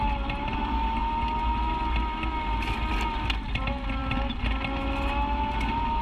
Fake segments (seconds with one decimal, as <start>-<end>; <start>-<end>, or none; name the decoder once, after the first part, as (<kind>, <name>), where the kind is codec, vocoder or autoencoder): none